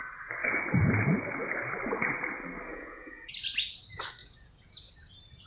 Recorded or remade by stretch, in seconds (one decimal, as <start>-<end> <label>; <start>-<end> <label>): 0.0-2.7 recorded; 2.7-3.3 remade; 3.3-4.2 recorded; 4.2-4.9 remade; 4.9-5.5 recorded